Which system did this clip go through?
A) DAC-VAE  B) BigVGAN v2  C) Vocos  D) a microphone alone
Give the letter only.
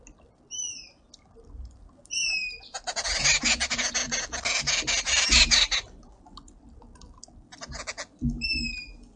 D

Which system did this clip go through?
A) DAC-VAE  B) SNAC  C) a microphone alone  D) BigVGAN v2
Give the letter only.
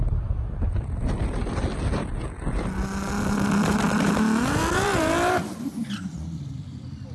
C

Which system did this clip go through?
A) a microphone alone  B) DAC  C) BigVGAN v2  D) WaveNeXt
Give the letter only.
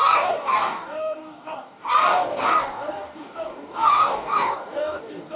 B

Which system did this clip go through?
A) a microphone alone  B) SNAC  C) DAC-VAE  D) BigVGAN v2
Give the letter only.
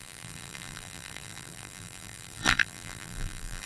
D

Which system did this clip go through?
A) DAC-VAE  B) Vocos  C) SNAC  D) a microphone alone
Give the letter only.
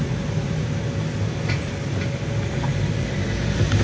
D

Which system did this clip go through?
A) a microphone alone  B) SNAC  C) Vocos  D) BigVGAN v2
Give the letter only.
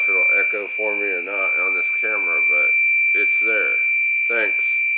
A